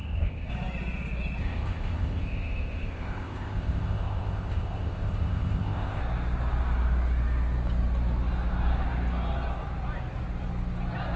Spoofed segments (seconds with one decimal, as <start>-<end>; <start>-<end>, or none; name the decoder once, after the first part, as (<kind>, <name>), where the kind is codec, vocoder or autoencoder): 0.0-0.5 (codec, ZipCodec); 1.4-6.0